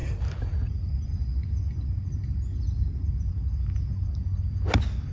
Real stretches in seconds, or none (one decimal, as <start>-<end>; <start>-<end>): 0.0-5.1